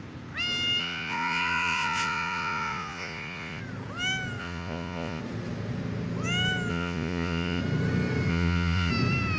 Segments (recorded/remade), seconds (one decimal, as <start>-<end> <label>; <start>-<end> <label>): 0.0-0.8 recorded; 0.8-3.6 remade; 3.6-4.4 recorded; 4.4-5.2 remade; 5.2-6.7 recorded; 6.7-7.6 remade; 7.6-8.3 recorded; 8.3-8.9 remade; 8.9-9.4 recorded